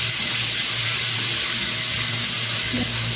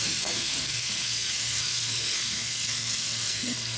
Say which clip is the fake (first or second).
second